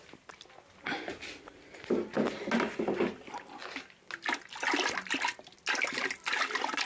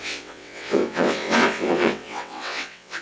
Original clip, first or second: first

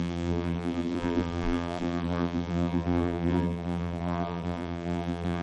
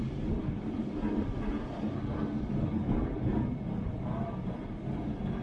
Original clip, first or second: second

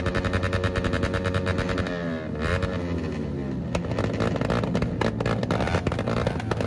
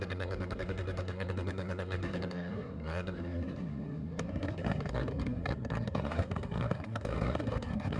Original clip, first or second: first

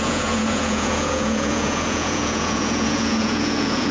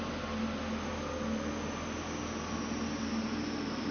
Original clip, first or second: second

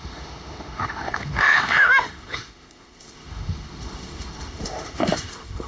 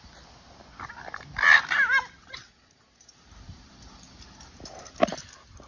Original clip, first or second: second